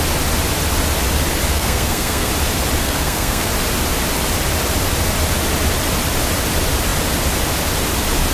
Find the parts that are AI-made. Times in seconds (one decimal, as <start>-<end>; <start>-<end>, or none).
1.5-2.3; 2.8-3.5